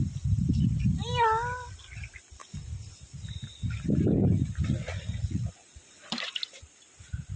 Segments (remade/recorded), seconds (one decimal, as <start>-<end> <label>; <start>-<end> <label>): 0.0-4.8 recorded; 4.8-6.3 remade; 6.3-7.4 recorded

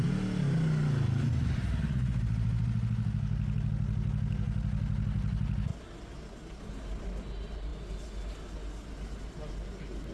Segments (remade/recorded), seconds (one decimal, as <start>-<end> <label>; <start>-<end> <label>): 0.0-10.1 recorded

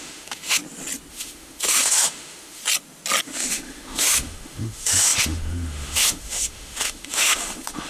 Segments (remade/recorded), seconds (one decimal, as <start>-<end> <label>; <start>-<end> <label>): 0.0-0.6 remade; 0.6-1.1 recorded; 1.1-2.6 remade; 2.6-3.2 recorded; 3.2-7.9 remade

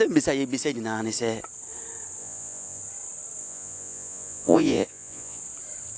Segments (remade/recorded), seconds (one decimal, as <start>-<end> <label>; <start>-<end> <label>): 0.0-2.2 recorded; 2.2-2.8 remade; 2.8-3.4 recorded; 3.4-5.4 remade; 5.4-6.0 recorded

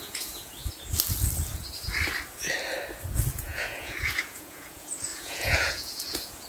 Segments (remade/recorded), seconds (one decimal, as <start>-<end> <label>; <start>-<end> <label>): 0.0-0.6 remade; 0.6-3.3 recorded; 3.3-6.5 remade

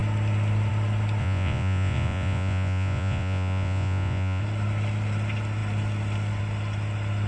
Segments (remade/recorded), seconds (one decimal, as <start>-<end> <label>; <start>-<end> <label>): 0.0-1.2 recorded; 1.2-4.4 remade; 4.4-7.3 recorded

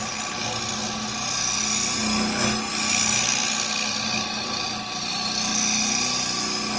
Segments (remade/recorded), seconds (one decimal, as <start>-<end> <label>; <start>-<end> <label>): 0.0-6.8 recorded